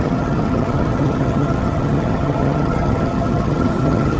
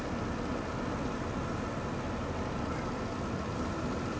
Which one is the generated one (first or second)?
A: first